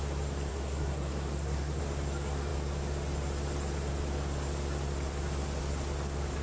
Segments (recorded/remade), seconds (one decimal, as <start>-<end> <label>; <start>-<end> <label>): 0.0-0.5 recorded; 0.5-1.8 remade; 1.8-6.4 recorded